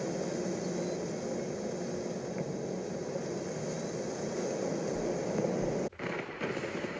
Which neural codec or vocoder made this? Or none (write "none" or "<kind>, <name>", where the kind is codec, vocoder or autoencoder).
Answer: none